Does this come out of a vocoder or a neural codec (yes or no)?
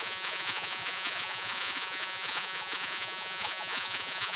yes